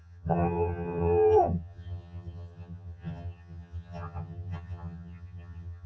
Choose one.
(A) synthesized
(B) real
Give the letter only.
A